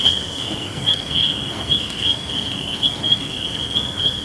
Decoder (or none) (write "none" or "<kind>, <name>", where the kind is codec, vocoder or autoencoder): codec, SNAC